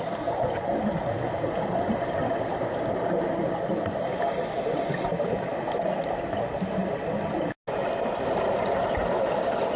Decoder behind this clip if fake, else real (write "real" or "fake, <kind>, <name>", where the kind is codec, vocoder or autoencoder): real